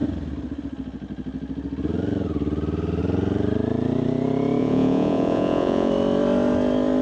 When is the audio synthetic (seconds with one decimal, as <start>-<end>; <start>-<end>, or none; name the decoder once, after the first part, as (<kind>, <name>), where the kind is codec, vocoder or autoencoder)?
4.6-5.9 (vocoder, Vocos)